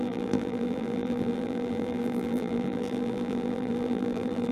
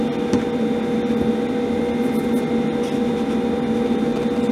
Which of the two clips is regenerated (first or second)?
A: first